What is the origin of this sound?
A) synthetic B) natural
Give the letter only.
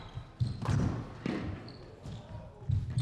B